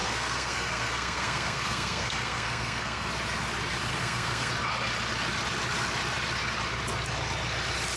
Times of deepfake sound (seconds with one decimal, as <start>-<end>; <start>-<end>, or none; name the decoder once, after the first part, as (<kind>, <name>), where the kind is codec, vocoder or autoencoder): 0.0-3.1 (codec, SNAC); 3.9-4.5